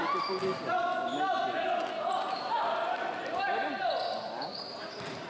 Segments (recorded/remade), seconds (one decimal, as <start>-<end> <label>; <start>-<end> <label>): 0.0-0.5 remade; 0.5-2.7 recorded; 2.7-5.3 remade